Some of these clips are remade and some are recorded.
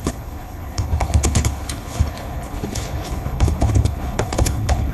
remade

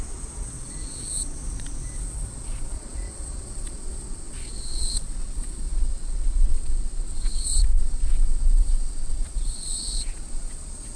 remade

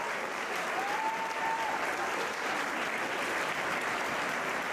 recorded